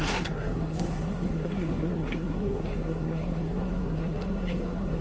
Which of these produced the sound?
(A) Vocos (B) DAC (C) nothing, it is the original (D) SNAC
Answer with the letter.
D